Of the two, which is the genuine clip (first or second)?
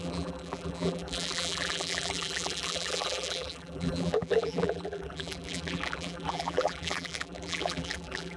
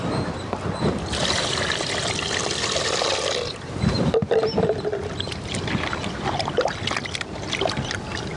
second